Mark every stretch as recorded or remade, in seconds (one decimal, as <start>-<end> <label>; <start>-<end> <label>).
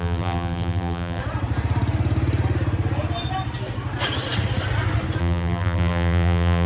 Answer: 0.0-1.2 remade; 1.2-5.2 recorded; 5.2-6.7 remade